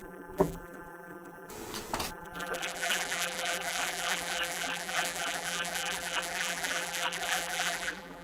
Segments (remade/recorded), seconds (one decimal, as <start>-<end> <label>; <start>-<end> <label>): 0.0-1.5 remade; 1.5-2.1 recorded; 2.1-8.2 remade